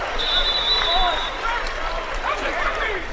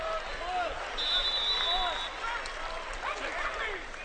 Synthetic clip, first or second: first